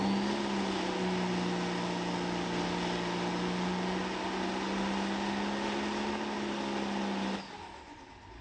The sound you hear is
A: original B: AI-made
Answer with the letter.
A